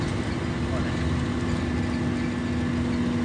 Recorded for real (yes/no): yes